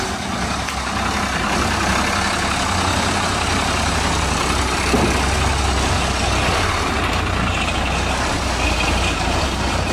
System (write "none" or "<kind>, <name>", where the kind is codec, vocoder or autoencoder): none